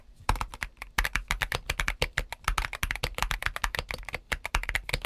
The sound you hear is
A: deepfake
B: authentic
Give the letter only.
B